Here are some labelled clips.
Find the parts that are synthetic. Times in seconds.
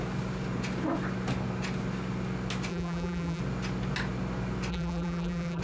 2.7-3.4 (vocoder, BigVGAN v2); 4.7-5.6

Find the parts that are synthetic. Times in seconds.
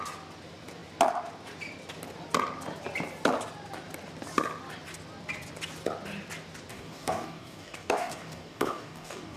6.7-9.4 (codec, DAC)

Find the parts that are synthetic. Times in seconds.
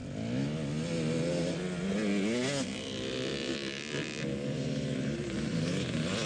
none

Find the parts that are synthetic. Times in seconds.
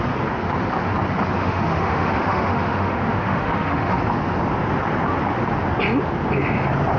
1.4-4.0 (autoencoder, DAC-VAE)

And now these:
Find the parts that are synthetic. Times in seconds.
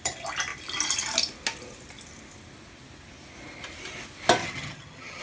4.4-5.2 (vocoder, HiFi-GAN)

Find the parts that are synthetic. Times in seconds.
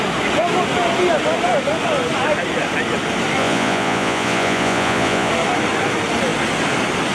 3.4-5.3 (vocoder, Vocos)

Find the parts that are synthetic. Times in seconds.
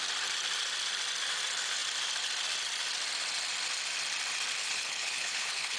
4.6-5.8 (codec, HILCodec)